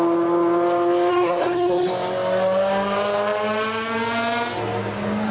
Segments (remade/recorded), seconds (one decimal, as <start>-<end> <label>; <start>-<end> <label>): 0.0-1.1 recorded; 1.1-1.9 remade; 1.9-5.3 recorded